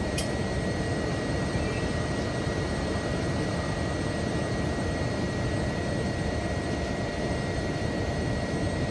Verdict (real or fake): fake